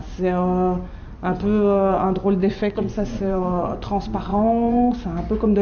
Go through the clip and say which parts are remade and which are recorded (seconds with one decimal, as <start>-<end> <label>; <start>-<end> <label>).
0.0-2.4 recorded; 2.4-3.7 remade; 3.7-4.3 recorded; 4.3-4.9 remade; 4.9-5.6 recorded